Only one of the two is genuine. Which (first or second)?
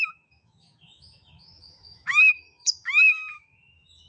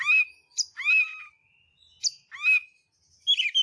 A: second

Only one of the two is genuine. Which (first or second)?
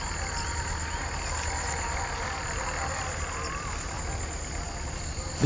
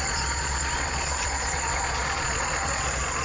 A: first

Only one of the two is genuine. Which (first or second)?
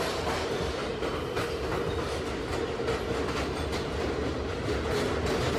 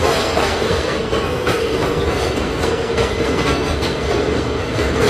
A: first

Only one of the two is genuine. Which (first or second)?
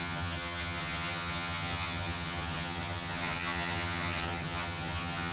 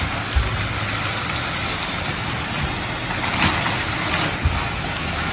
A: second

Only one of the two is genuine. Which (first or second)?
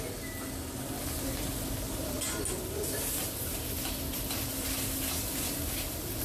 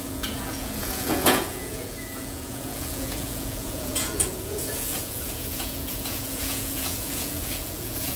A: first